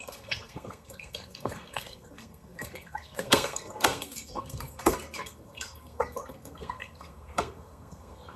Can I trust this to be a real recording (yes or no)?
no